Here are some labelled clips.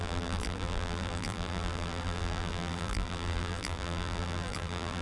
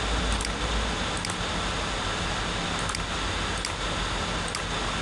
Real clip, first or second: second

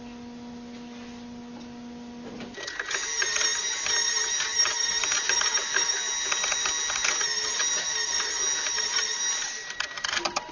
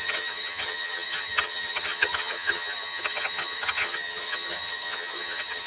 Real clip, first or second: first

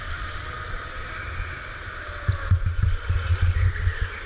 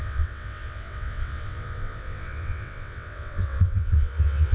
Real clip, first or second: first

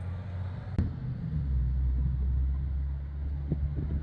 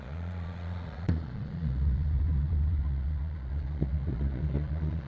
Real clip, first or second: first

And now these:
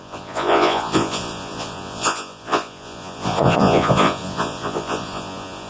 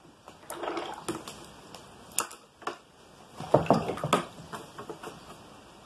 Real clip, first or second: second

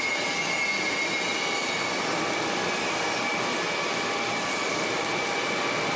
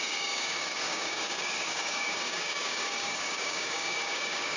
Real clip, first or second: first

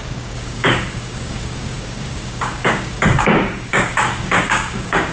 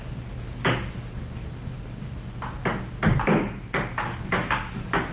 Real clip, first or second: second